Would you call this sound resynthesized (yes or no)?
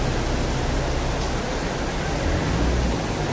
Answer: no